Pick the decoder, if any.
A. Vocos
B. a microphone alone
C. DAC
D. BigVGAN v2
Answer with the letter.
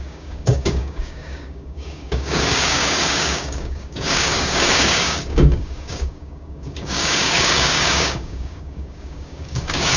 C